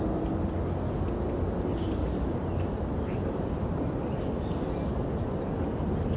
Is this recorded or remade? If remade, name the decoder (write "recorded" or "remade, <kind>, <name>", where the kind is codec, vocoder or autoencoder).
recorded